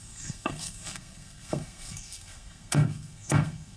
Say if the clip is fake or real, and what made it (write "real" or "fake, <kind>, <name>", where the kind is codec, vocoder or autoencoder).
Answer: fake, codec, SNAC